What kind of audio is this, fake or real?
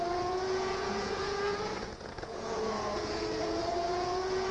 fake